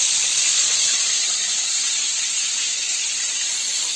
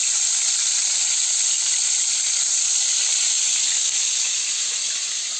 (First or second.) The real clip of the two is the second